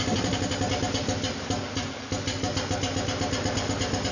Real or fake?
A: real